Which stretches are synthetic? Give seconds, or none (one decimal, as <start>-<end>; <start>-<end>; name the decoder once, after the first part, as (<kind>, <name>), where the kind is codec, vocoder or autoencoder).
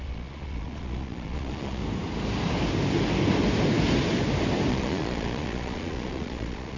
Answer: 0.0-1.8 (vocoder, Vocos); 4.7-6.8